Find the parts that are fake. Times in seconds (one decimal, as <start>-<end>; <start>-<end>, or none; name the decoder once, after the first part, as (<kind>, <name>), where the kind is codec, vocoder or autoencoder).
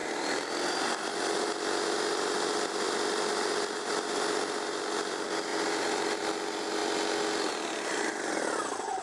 none